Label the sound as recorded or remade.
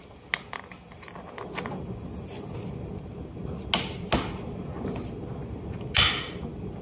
recorded